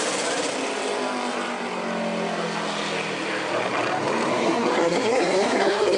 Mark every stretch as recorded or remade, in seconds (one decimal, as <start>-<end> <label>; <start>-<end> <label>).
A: 0.0-4.3 recorded; 4.3-6.0 remade